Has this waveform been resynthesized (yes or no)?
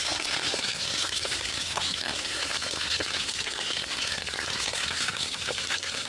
yes